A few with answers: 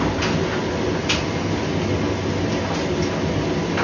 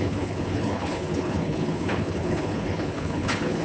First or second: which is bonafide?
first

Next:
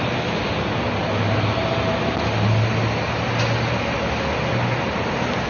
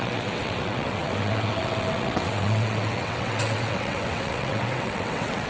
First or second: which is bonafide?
first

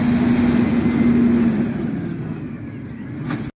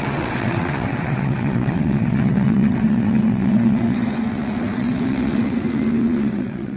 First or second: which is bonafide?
first